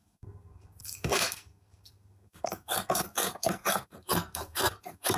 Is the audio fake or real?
fake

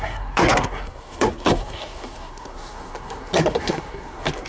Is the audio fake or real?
fake